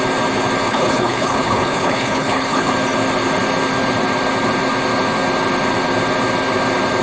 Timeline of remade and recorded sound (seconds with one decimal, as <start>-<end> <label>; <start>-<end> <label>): 0.0-0.6 recorded; 0.6-2.7 remade; 2.7-7.0 recorded